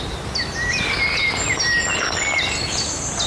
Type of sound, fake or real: real